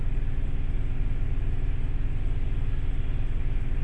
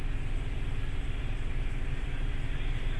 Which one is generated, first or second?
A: second